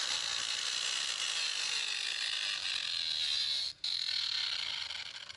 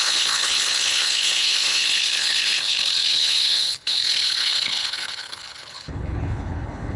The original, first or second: first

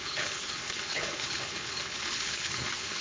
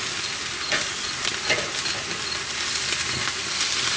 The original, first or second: second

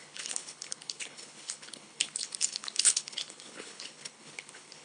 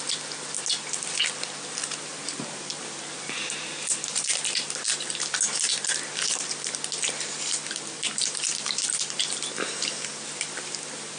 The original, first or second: second